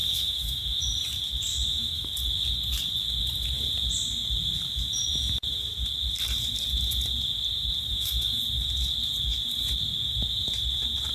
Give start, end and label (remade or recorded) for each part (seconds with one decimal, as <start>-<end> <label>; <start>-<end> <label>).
0.0-0.8 remade; 0.8-1.5 recorded; 1.5-2.1 remade; 2.1-7.9 recorded; 7.9-8.4 remade; 8.4-11.1 recorded